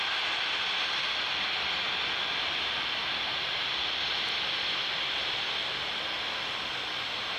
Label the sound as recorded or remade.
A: recorded